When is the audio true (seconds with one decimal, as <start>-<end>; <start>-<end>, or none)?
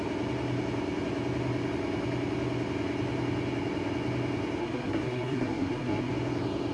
0.0-4.6; 6.1-6.7